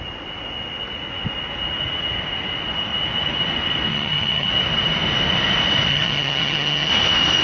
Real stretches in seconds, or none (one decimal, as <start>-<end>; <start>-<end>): 0.0-3.9; 4.5-5.9; 6.9-7.4